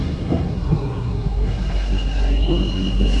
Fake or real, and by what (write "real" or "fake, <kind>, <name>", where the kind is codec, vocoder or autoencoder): fake, codec, SNAC